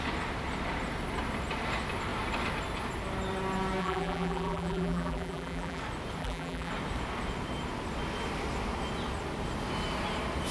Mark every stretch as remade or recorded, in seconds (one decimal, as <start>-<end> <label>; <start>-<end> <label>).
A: 0.0-3.8 recorded; 3.8-5.8 remade; 5.8-6.2 recorded; 6.2-6.7 remade; 6.7-10.5 recorded

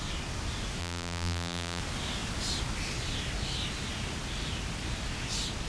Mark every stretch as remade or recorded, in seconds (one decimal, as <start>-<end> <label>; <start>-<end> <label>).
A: 0.0-0.8 recorded; 0.8-1.8 remade; 1.8-5.7 recorded